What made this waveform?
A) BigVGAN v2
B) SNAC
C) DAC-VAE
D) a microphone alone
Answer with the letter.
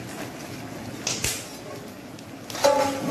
D